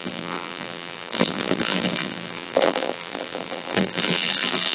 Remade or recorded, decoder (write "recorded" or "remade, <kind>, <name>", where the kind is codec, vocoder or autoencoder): remade, vocoder, BigVGAN v2